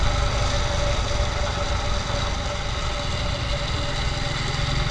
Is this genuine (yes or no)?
yes